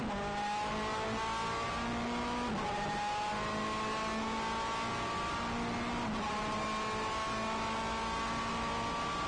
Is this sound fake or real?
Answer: real